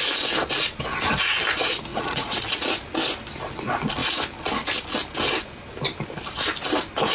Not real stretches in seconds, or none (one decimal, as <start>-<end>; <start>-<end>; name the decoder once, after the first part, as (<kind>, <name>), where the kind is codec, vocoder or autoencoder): 1.9-2.7 (vocoder, Vocos)